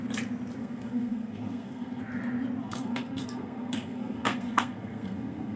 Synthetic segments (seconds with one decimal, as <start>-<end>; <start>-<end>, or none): 0.6-2.0; 2.6-5.6